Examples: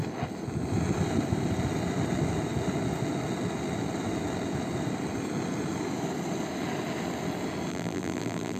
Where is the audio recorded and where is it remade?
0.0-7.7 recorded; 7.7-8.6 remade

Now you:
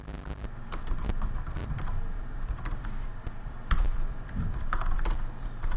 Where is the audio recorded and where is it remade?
0.0-1.6 recorded; 1.6-5.1 remade; 5.1-5.8 recorded